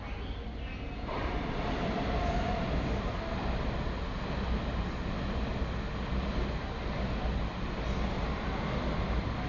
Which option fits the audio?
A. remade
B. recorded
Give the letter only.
B